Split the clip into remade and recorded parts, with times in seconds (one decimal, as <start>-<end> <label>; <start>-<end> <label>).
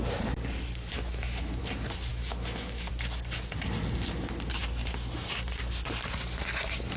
0.0-0.9 recorded; 0.9-1.6 remade; 1.6-2.1 recorded; 2.1-2.9 remade; 2.9-7.0 recorded